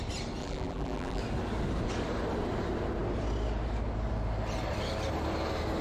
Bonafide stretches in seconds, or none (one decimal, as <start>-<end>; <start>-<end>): 0.0-0.4; 1.2-5.8

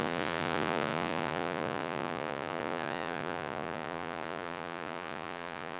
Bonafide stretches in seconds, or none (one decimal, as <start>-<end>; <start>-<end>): none

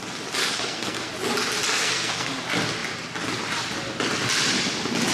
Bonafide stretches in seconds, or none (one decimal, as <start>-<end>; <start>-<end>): 0.0-0.4; 1.1-1.7; 2.3-5.1